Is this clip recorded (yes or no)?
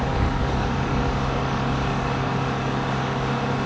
no